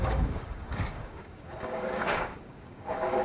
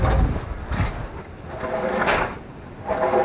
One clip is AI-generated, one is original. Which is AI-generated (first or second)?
first